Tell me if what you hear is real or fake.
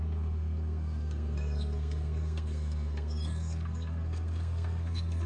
fake